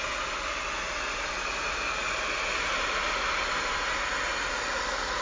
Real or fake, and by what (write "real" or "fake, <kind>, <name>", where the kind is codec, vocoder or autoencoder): real